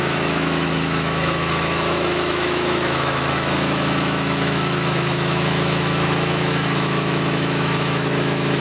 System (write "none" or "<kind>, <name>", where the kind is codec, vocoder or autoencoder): autoencoder, DAC-VAE